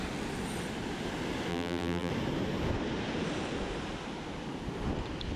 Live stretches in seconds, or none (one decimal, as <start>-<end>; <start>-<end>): 0.0-1.5; 2.1-5.4